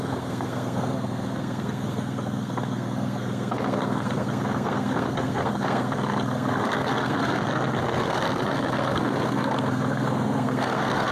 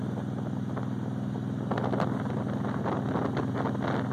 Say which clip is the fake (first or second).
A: first